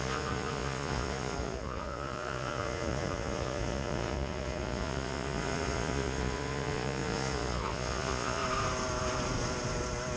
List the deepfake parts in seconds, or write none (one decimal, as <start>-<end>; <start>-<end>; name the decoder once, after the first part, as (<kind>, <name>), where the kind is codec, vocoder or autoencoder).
0.0-8.4 (vocoder, Vocos)